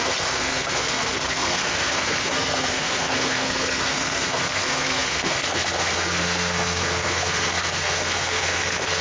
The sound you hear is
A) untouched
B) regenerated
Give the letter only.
B